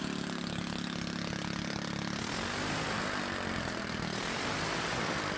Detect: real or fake real